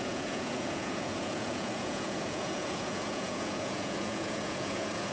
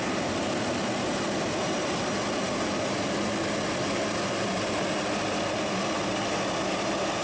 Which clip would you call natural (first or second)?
second